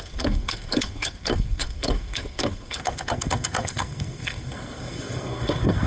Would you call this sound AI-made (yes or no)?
yes